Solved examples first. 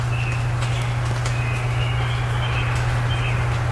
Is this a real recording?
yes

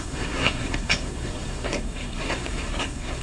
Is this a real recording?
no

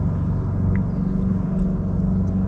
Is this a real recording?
yes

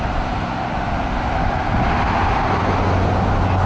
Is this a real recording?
yes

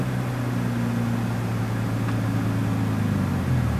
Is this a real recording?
yes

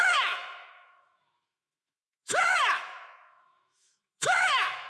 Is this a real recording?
no